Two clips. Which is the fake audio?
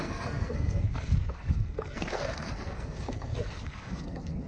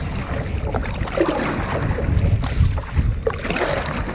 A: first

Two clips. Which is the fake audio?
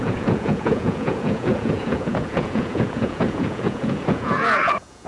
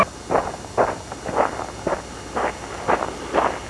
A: first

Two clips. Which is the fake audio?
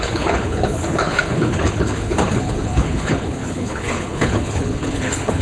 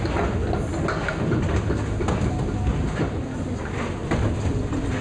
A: first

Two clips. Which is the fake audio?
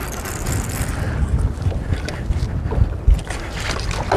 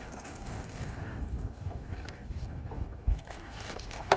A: second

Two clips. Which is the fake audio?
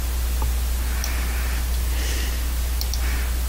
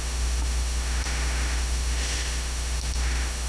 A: second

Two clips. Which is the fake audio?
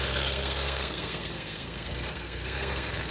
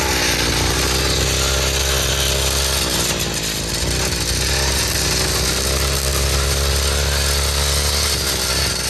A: first